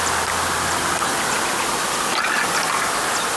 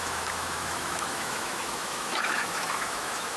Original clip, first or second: first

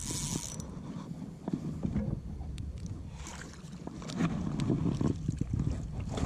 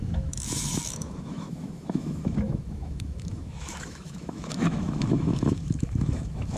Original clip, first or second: first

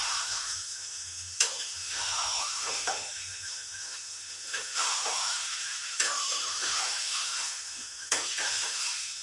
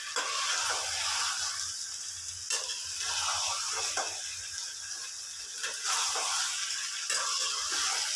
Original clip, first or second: second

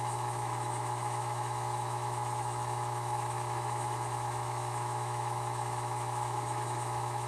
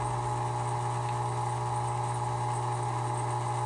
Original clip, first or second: second